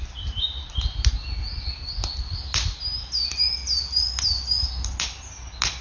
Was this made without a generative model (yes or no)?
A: yes